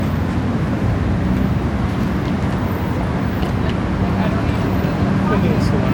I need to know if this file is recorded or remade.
recorded